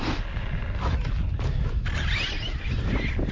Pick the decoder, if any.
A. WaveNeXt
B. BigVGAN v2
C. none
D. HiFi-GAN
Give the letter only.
C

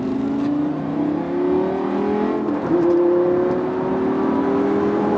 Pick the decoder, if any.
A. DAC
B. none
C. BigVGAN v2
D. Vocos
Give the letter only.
B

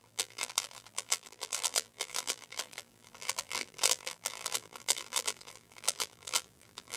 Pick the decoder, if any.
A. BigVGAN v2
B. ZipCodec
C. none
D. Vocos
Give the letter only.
A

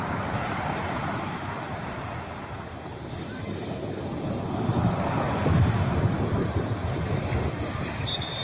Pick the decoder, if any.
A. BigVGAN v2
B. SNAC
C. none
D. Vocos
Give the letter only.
A